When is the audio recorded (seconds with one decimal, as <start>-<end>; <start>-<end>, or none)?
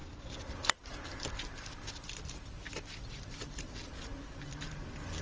0.0-5.2